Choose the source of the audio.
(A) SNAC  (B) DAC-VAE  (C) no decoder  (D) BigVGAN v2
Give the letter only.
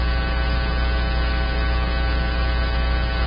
C